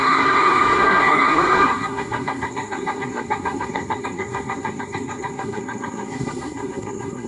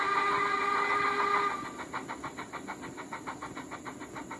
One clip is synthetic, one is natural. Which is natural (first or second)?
second